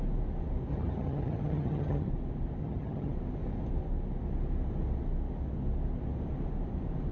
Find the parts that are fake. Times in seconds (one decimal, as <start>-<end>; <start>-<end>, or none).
0.7-2.1; 2.6-3.1